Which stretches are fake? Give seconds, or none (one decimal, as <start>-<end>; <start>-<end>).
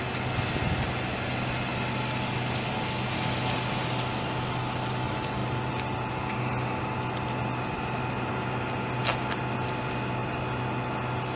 none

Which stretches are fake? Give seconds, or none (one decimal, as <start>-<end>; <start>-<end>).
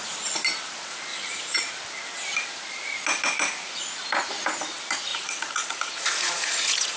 1.1-1.7; 5.1-7.0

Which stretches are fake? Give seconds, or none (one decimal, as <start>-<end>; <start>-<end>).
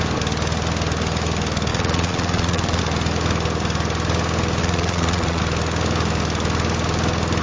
1.7-2.8; 4.6-5.4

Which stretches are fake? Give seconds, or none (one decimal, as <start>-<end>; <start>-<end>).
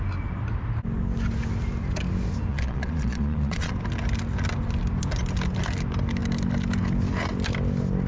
2.5-3.7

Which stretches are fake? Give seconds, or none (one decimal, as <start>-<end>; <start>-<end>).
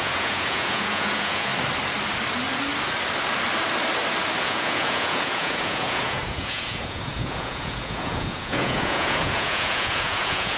0.0-1.5; 4.4-10.6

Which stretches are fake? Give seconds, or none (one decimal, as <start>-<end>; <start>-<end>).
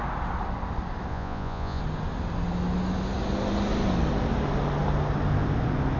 1.1-1.8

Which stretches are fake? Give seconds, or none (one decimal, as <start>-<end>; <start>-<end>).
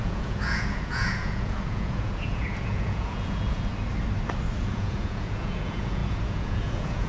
0.0-3.7; 4.6-7.1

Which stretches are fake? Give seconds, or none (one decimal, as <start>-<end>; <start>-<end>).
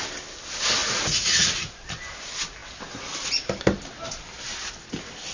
0.8-1.7